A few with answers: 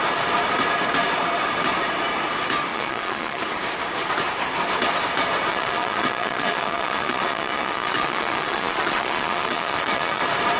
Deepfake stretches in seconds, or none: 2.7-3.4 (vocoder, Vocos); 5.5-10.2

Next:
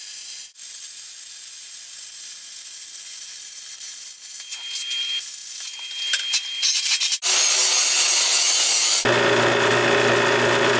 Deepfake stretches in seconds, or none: none

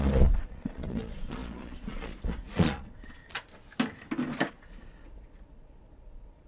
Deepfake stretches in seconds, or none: 0.0-3.2 (vocoder, Vocos); 4.5-6.5

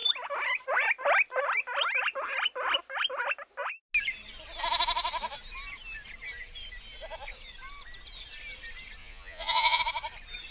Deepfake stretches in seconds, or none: 9.0-9.8 (vocoder, Vocos)

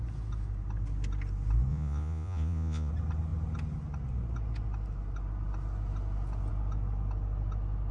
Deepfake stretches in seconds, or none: 1.7-2.9 (vocoder, Vocos)